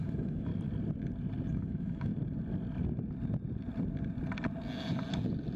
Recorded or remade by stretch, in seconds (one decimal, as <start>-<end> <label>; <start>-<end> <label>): 0.0-0.5 remade; 0.5-1.5 recorded; 1.5-2.1 remade; 2.1-5.6 recorded